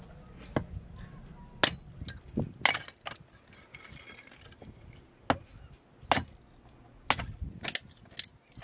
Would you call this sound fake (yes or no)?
no